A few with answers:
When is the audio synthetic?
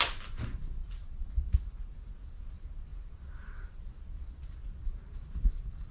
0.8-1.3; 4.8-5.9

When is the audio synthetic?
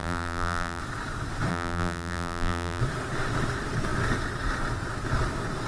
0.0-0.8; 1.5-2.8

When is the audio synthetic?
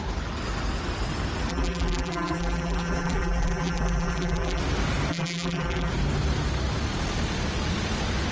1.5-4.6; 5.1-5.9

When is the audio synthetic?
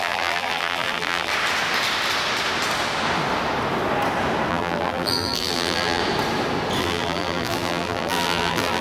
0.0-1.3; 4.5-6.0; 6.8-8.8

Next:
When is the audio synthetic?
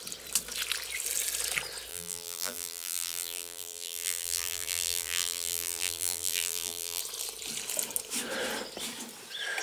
1.9-7.0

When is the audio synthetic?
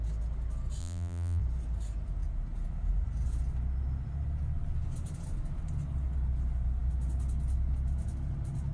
0.8-1.4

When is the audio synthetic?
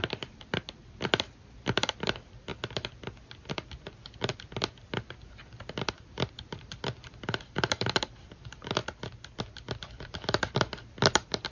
0.0-2.5; 5.9-8.8; 9.8-11.5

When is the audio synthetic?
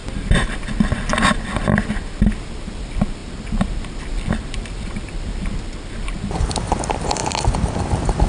0.0-7.2; 7.8-8.3